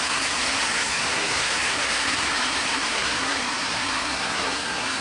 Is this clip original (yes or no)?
no